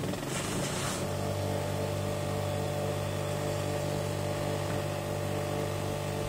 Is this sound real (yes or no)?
yes